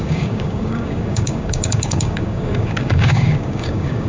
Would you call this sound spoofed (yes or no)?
yes